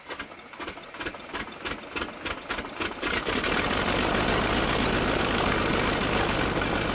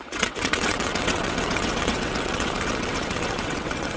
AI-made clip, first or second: second